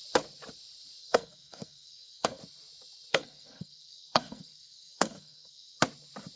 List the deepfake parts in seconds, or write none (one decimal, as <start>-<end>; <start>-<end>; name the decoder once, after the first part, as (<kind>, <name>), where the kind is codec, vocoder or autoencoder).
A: 1.0-2.4 (codec, SNAC); 3.1-5.8